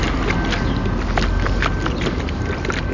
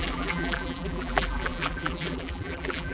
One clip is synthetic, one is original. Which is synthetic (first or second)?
second